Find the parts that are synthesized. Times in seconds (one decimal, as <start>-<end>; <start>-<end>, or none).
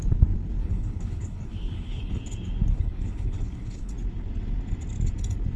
0.6-2.2; 2.7-3.9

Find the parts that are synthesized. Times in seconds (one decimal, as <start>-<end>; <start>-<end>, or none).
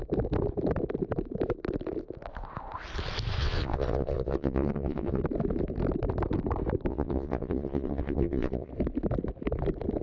3.4-5.2; 6.9-8.7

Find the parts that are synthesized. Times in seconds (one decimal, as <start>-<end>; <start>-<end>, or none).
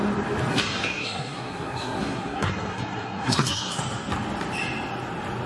0.5-3.8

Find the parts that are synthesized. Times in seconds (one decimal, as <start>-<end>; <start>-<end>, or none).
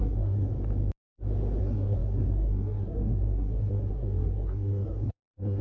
0.0-0.5; 1.6-5.6